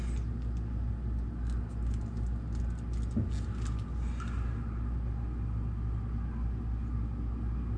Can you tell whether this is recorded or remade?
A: recorded